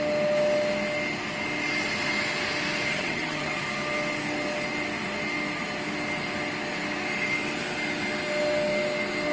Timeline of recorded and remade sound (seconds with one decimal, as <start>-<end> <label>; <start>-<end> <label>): 0.0-2.9 recorded; 2.9-3.6 remade; 3.6-9.3 recorded